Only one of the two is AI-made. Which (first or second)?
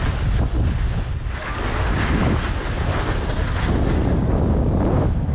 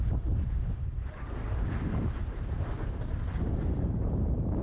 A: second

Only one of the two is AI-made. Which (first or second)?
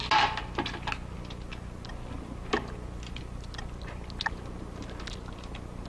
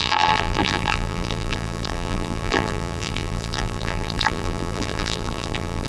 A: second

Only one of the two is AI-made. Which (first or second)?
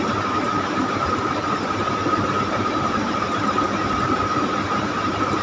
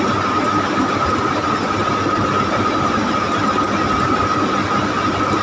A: first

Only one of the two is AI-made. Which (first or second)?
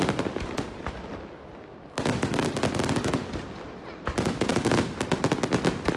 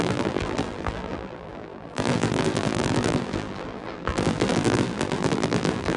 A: second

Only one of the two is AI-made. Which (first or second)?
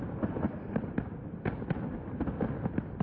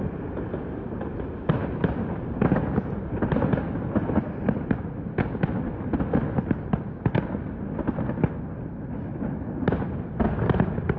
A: first